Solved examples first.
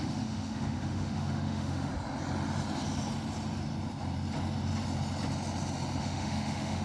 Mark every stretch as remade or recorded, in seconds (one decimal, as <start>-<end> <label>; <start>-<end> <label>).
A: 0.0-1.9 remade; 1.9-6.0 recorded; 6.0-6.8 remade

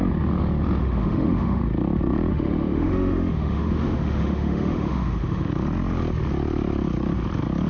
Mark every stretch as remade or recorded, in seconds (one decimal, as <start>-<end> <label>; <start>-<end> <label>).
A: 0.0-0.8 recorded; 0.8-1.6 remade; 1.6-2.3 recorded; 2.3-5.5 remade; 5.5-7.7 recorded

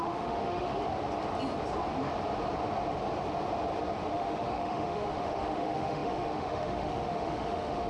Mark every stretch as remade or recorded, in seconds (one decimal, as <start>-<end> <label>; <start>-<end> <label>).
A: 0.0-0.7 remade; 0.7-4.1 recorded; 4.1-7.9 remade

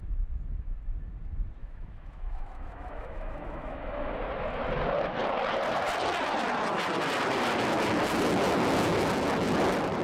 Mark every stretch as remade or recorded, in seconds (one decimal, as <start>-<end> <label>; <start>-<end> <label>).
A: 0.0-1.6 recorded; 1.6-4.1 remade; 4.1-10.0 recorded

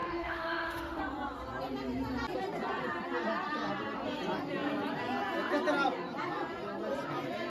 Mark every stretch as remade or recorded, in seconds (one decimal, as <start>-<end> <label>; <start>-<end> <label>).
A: 0.0-1.0 remade; 1.0-7.5 recorded

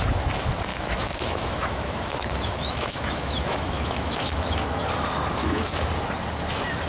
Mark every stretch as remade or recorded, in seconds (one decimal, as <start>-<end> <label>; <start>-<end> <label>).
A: 0.0-0.7 recorded; 0.7-4.8 remade; 4.8-5.4 recorded; 5.4-5.9 remade; 5.9-6.9 recorded

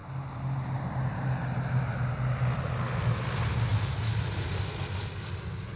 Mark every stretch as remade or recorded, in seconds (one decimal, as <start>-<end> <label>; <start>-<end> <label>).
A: 0.0-5.8 recorded

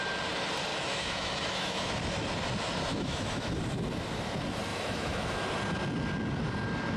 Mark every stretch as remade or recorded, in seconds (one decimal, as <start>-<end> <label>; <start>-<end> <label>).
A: 0.0-0.7 recorded; 0.7-1.9 remade; 1.9-2.9 recorded; 2.9-3.5 remade; 3.5-4.7 recorded; 4.7-5.4 remade; 5.4-7.0 recorded